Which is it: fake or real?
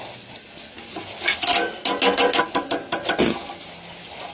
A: real